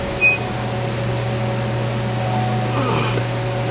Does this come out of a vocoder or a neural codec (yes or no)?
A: no